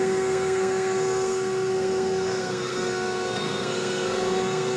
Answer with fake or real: fake